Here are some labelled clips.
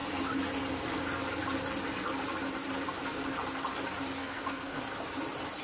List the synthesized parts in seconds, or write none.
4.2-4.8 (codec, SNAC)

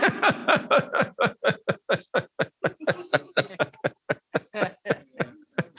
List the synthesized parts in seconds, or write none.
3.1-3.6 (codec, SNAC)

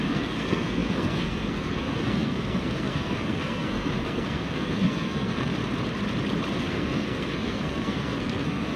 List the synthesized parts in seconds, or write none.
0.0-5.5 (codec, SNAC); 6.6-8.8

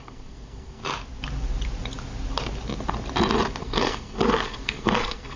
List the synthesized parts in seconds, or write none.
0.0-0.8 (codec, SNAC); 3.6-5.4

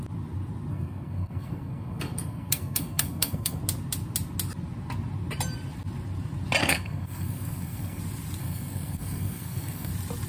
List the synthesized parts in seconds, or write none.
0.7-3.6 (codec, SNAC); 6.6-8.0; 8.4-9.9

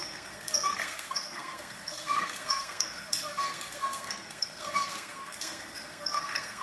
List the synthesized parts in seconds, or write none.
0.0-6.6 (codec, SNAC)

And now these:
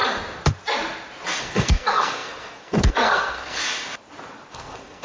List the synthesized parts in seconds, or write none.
1.4-3.6 (codec, SNAC); 4.5-5.0